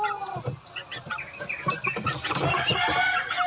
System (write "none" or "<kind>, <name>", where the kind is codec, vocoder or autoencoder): none